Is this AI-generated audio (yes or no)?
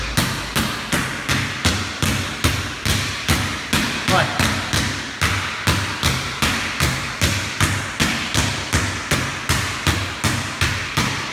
no